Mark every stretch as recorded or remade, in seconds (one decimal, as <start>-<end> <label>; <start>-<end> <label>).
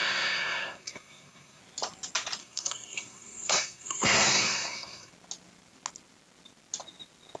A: 0.0-1.6 remade; 1.6-2.4 recorded; 2.4-5.1 remade; 5.1-7.4 recorded